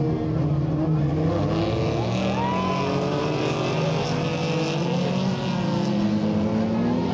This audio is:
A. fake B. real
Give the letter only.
B